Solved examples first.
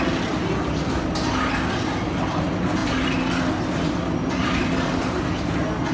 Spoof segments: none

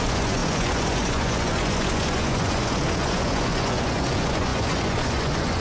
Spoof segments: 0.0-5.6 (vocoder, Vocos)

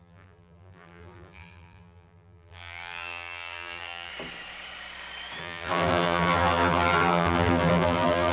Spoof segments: 0.0-4.1 (vocoder, BigVGAN v2); 5.4-8.3

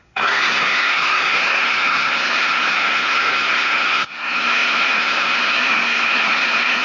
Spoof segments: 0.0-6.8 (codec, SNAC)

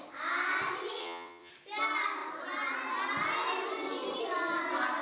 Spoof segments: 1.0-1.5 (vocoder, WaveNeXt)

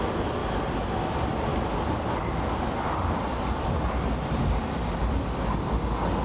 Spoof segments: none

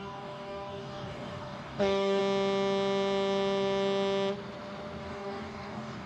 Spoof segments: 0.0-2.2 (codec, DAC); 5.0-6.1